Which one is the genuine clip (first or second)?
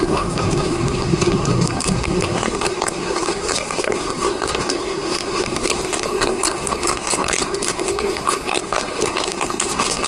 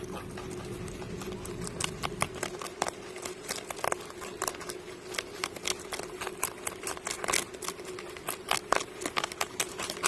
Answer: second